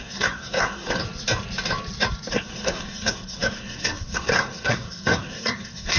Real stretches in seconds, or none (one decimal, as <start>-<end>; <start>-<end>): 1.0-2.3